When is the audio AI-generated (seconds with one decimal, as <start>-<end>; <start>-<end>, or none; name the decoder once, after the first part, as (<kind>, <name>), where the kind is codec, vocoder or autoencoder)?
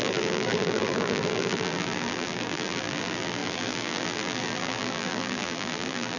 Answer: 0.0-6.2 (vocoder, BigVGAN v2)